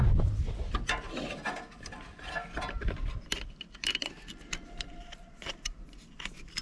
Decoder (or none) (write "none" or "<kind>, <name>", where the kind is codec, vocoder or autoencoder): none